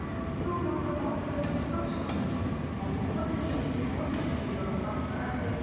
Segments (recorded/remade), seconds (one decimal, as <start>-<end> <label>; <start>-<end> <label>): 0.0-5.6 recorded